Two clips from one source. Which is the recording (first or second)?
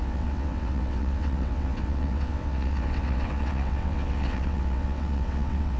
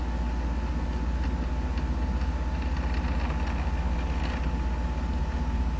second